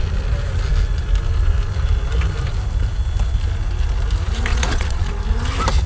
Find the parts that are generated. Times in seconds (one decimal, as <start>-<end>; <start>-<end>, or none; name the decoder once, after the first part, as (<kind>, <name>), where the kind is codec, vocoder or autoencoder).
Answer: 4.5-5.1 (vocoder, Vocos)